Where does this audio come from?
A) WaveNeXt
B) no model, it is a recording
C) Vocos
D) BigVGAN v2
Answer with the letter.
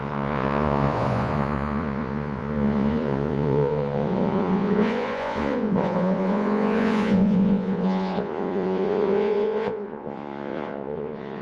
C